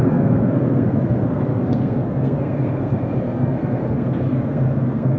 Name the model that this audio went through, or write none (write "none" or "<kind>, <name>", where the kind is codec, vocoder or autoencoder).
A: codec, SNAC